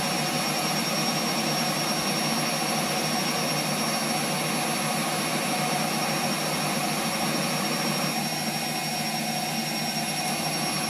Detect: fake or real real